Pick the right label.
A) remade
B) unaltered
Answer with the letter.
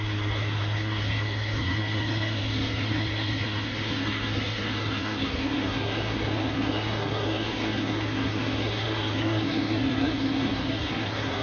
A